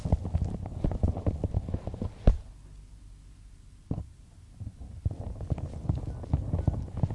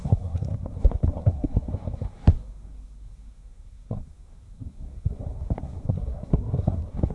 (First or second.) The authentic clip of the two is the first